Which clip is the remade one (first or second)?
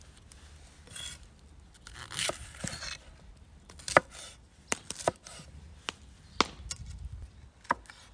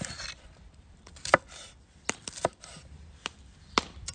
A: second